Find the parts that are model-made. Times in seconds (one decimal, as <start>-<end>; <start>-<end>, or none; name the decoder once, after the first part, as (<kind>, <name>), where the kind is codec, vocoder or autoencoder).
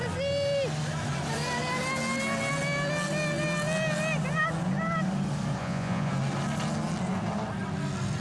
5.6-6.1 (vocoder, Vocos)